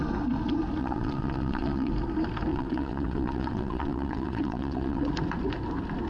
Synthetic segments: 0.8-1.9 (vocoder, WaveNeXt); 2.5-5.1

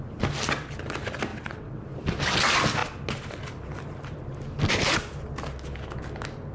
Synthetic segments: 1.3-1.8 (vocoder, WaveNeXt)

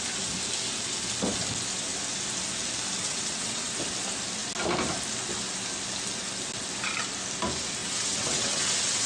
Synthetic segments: 3.0-3.7 (vocoder, WaveNeXt); 7.8-9.1

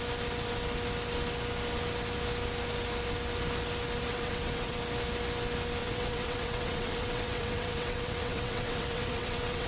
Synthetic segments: 4.1-4.8 (vocoder, WaveNeXt); 5.8-9.7

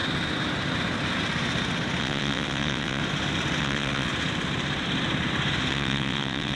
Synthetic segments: 2.0-3.0 (vocoder, WaveNeXt); 3.6-4.1; 5.7-6.6